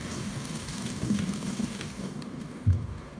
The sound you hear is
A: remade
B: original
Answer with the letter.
A